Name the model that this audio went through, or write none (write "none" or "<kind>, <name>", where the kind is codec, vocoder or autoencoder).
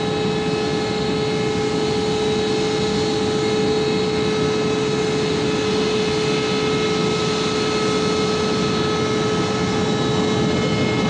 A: none